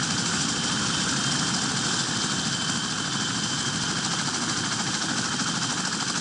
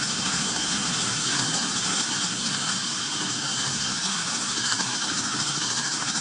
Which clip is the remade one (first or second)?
second